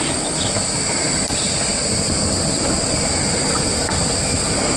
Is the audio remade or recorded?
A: recorded